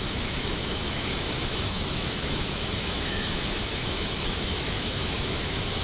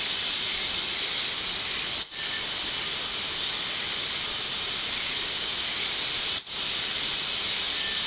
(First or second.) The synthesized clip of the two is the first